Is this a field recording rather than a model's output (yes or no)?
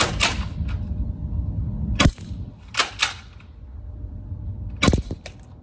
yes